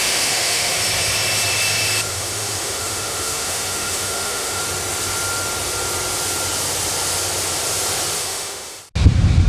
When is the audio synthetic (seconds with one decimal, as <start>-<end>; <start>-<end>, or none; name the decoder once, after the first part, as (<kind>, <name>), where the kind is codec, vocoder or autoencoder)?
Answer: 0.0-0.7 (autoencoder, DAC-VAE); 2.1-4.6; 8.2-8.8